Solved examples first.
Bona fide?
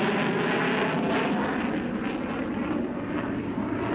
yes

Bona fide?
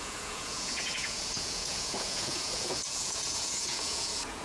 no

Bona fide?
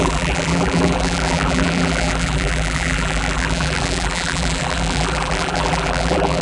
no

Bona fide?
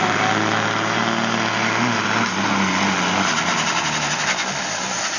yes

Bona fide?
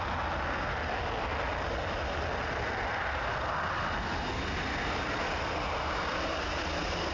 yes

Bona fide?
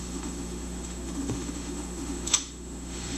no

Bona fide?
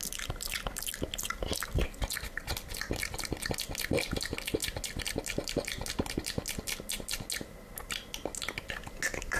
yes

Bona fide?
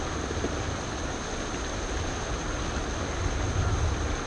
yes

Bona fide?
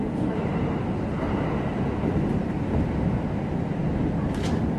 yes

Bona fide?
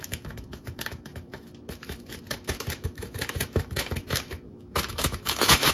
no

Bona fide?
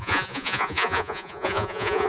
no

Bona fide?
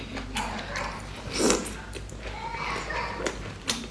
yes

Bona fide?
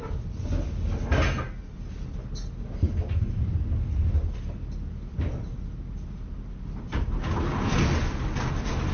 yes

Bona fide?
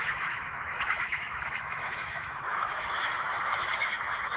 no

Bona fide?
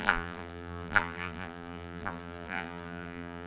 no